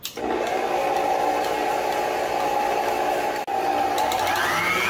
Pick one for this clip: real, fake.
real